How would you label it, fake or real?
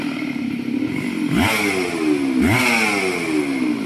real